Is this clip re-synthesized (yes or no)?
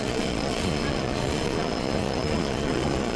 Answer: yes